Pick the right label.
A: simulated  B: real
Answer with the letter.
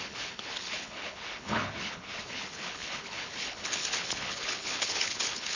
A